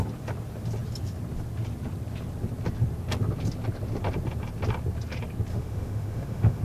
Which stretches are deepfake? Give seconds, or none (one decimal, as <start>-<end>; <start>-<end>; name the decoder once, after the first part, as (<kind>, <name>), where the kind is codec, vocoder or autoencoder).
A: 5.5-6.6 (autoencoder, DAC-VAE)